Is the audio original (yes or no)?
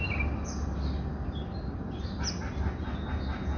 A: yes